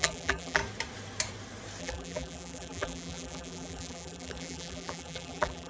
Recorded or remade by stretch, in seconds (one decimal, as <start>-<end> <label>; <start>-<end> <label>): 0.0-0.6 remade; 0.6-1.8 recorded; 1.8-5.7 remade